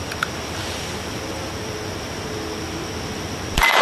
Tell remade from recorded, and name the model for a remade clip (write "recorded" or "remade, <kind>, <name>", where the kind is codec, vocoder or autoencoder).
remade, vocoder, BigVGAN v2